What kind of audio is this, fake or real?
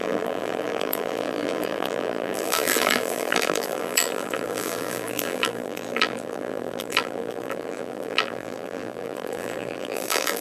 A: fake